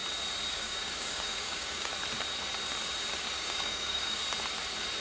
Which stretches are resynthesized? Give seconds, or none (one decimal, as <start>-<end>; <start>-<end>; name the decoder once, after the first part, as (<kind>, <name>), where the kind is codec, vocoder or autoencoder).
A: 0.5-1.9 (codec, DAC); 3.2-4.2